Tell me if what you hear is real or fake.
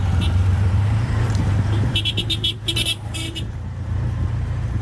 fake